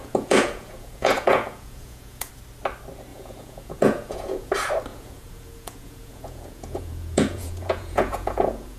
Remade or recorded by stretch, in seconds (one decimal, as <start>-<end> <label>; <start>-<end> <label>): 0.0-2.3 remade; 2.3-3.1 recorded; 3.1-4.5 remade; 4.5-4.9 recorded; 4.9-8.8 remade